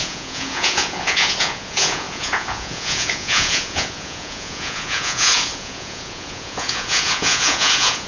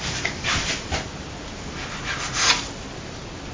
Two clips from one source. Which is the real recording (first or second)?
second